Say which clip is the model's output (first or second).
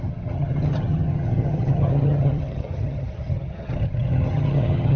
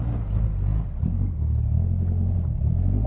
first